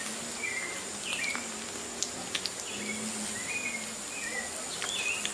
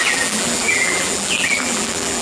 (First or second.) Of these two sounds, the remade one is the second